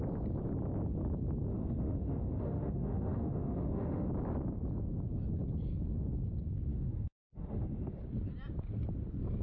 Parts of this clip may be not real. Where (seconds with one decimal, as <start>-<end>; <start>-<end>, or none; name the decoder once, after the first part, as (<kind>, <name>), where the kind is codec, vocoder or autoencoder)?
1.5-4.1 (autoencoder, DAC-VAE); 6.7-8.0